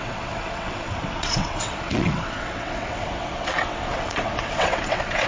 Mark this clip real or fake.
fake